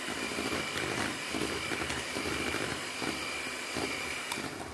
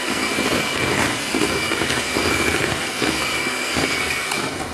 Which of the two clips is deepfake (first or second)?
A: second